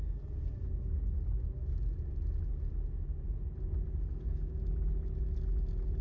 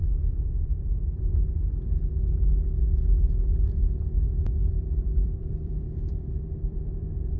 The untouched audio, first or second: first